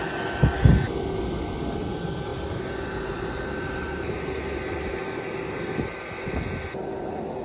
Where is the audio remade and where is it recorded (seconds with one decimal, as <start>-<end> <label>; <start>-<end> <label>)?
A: 0.0-7.4 recorded